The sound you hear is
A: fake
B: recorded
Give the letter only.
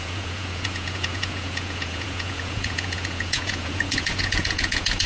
A